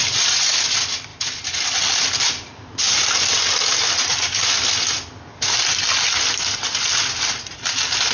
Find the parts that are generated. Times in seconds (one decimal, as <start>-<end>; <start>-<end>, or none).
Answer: none